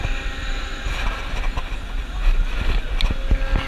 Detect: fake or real real